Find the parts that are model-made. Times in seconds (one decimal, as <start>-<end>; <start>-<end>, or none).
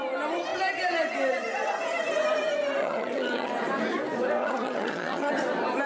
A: 2.8-3.5; 4.4-5.3